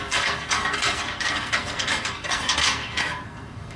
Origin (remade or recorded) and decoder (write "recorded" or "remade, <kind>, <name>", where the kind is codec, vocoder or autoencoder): remade, codec, SNAC